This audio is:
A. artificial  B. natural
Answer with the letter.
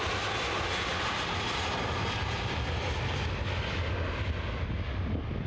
B